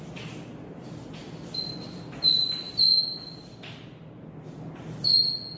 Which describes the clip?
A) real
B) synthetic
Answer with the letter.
A